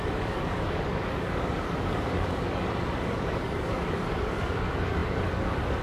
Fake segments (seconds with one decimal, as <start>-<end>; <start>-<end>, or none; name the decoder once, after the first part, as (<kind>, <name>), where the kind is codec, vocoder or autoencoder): 0.0-5.8 (codec, DAC)